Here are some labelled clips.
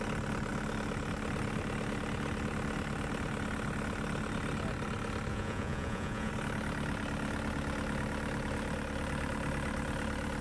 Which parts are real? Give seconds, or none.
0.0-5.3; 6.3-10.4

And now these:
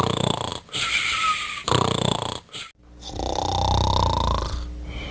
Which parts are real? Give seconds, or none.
0.0-5.1

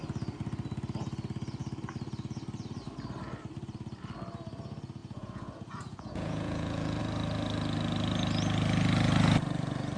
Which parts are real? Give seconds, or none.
0.0-5.0; 7.0-10.0

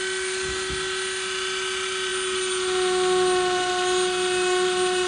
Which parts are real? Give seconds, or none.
0.0-5.1

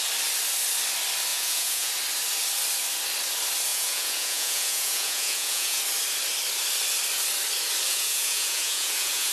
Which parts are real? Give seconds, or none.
0.0-1.3; 1.9-3.7; 5.8-7.9